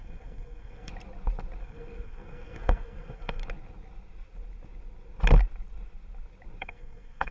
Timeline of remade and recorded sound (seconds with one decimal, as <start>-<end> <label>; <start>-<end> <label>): 0.0-0.9 remade; 0.9-1.6 recorded; 1.6-3.4 remade; 3.4-6.6 recorded; 6.6-7.3 remade